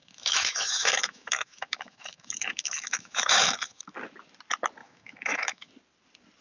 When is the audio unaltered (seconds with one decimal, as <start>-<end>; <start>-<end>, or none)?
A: 3.8-4.8; 5.7-6.4